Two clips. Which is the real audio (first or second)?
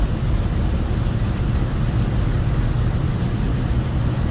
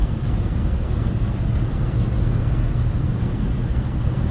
first